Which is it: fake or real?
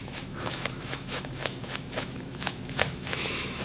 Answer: fake